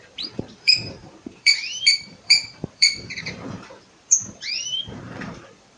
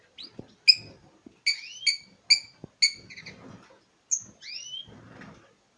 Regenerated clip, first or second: first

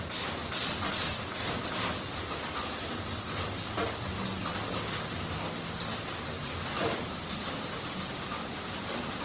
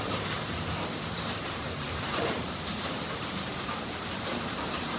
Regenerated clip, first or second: second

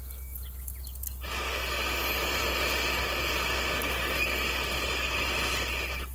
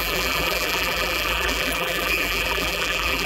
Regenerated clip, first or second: second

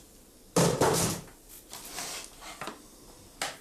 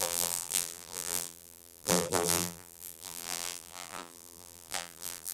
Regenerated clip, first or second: second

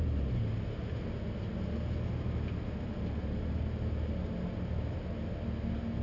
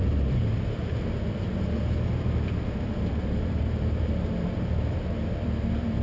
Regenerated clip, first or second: second